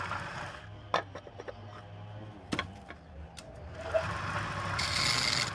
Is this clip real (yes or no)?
yes